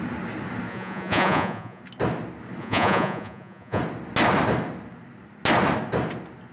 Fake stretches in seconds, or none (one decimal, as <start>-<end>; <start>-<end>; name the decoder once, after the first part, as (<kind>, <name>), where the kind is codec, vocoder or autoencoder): 0.7-1.8 (vocoder, Vocos); 2.6-3.8